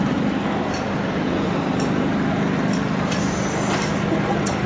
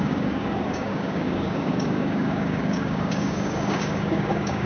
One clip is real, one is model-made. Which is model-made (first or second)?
second